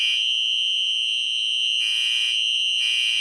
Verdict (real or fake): fake